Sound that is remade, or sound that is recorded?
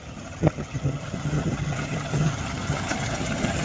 remade